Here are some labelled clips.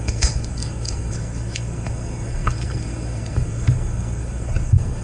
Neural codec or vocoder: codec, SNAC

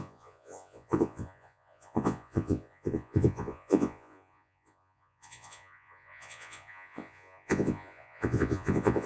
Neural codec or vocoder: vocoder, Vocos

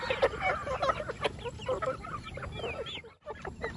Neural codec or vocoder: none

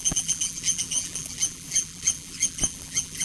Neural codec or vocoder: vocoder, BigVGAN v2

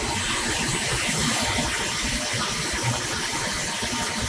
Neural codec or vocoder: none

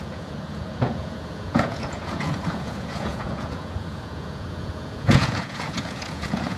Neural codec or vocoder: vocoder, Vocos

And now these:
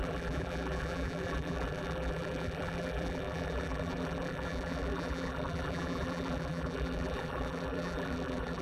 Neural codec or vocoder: vocoder, BigVGAN v2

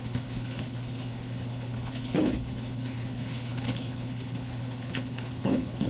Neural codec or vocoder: codec, HILCodec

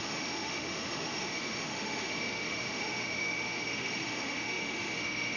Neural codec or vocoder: autoencoder, DAC-VAE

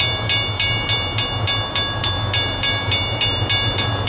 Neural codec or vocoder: none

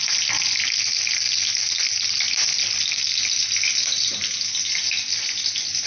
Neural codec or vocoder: none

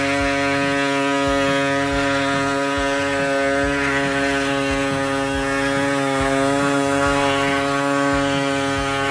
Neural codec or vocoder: none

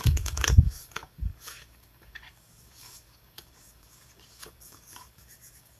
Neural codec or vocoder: codec, DAC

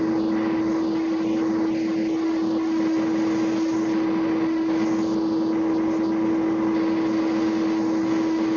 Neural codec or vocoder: none